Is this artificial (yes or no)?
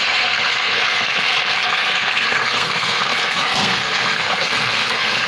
yes